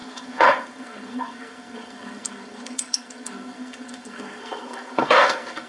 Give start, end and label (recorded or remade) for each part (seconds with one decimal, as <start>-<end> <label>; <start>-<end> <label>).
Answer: 0.0-5.7 remade

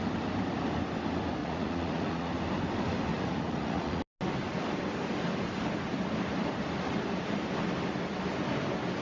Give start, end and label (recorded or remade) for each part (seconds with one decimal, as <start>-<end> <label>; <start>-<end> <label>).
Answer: 0.0-1.4 recorded; 1.4-2.3 remade; 2.3-3.1 recorded; 3.1-4.0 remade; 4.0-9.0 recorded

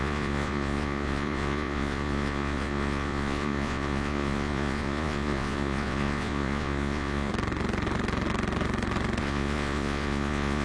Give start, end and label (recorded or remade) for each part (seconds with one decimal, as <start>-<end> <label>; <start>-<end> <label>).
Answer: 0.0-7.3 remade; 7.3-9.2 recorded; 9.2-10.6 remade

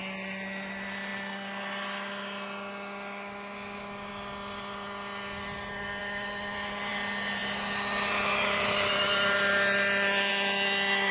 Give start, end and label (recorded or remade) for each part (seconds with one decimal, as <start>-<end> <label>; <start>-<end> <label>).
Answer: 0.0-11.1 recorded